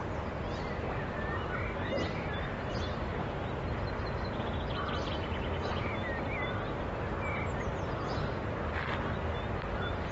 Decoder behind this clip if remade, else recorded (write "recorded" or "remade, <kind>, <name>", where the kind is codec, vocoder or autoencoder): recorded